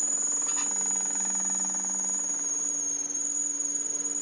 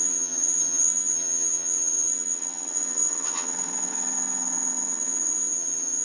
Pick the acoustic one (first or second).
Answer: first